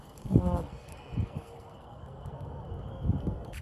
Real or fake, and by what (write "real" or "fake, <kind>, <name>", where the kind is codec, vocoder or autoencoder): fake, codec, SNAC